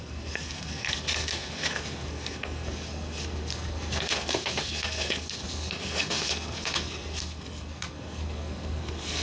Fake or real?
fake